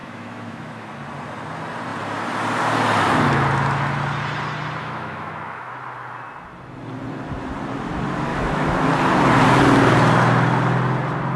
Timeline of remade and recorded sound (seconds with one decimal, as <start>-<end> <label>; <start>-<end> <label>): 0.0-0.9 remade; 0.9-4.8 recorded; 4.8-5.7 remade; 5.7-8.3 recorded; 8.3-8.9 remade; 8.9-11.4 recorded